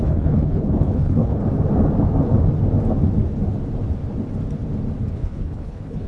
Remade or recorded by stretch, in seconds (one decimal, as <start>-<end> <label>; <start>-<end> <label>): 0.0-1.4 remade; 1.4-5.1 recorded; 5.1-6.1 remade